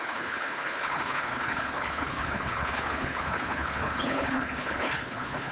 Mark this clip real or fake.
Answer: fake